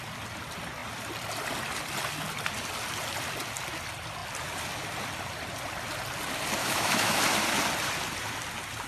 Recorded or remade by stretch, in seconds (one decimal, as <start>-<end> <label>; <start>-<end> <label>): 0.0-6.6 recorded; 6.6-7.2 remade; 7.2-8.9 recorded